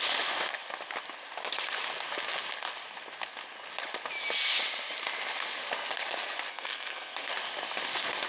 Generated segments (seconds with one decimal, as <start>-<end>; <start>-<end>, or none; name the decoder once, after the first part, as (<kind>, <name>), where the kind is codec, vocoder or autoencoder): 6.5-7.3 (codec, SNAC)